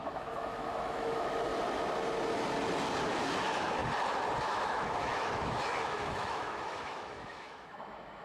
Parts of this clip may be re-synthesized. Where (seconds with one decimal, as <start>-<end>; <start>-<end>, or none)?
0.0-1.5; 3.4-3.8; 4.4-8.2